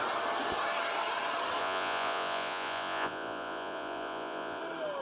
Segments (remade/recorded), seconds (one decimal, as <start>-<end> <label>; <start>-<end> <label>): 0.0-1.6 recorded; 1.6-4.6 remade; 4.6-5.0 recorded